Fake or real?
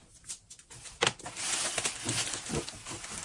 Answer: real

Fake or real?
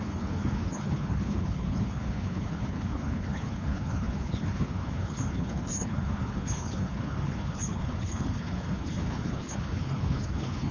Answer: fake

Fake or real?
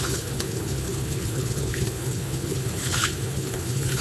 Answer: fake